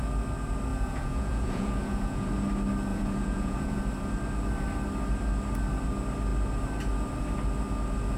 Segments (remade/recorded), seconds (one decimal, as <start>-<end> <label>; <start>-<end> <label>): 0.0-0.7 recorded; 0.7-2.3 remade; 2.3-2.9 recorded; 2.9-3.8 remade; 3.8-8.2 recorded